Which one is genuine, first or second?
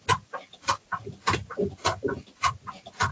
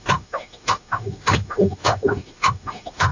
first